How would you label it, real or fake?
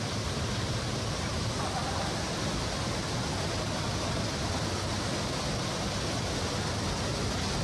real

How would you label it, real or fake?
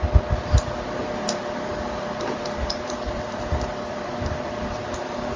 fake